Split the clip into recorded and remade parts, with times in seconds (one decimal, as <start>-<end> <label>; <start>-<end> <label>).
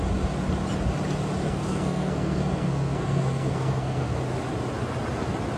0.0-1.4 recorded; 1.4-4.2 remade; 4.2-5.6 recorded